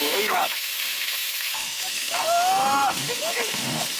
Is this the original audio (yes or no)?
no